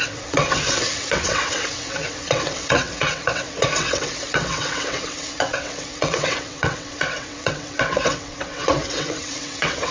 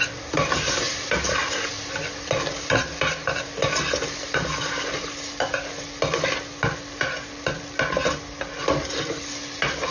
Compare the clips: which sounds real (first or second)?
second